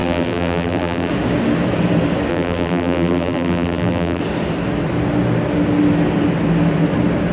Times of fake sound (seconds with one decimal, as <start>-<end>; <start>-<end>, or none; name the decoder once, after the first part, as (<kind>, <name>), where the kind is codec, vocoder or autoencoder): 0.0-1.1 (vocoder, BigVGAN v2); 2.3-4.2